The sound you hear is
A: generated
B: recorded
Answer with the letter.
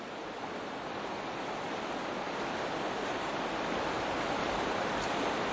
A